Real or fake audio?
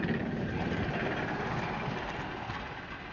real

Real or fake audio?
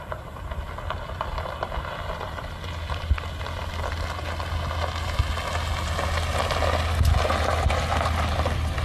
real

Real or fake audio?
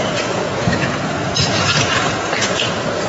fake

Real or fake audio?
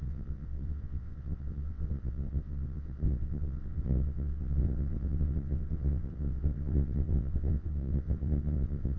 fake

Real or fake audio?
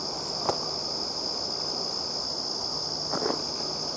real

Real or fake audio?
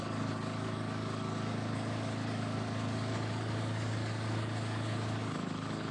fake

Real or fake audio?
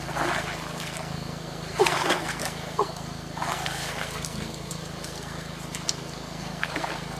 fake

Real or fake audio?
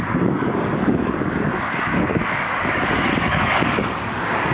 fake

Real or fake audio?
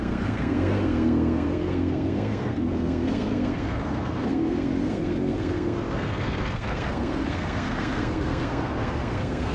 fake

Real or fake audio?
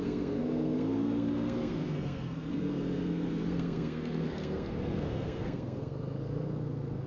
fake